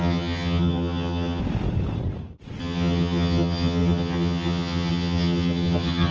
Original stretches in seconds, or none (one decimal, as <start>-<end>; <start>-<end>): 1.4-2.6